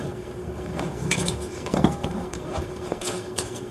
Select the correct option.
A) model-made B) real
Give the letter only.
A